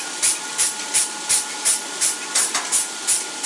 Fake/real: real